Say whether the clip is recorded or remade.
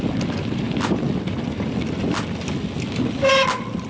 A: recorded